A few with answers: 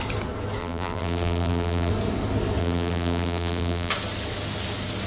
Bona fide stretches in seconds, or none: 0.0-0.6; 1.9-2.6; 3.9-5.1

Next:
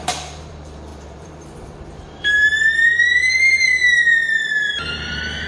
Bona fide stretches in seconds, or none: none

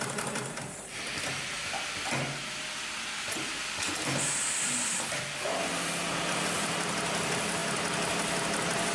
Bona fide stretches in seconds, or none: 0.0-8.9

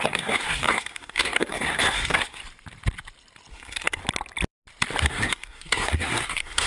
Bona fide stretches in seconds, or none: 2.4-3.5; 4.0-5.0

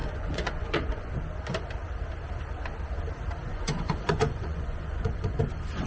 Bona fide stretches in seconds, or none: 1.1-3.5; 5.4-5.9

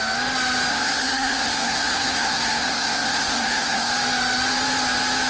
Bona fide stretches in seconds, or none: 0.0-0.7; 3.9-5.3